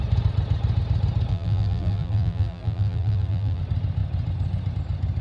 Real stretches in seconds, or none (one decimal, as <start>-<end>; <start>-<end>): 0.0-1.3; 3.6-5.2